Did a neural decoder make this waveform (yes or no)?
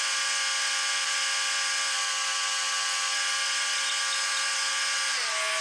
no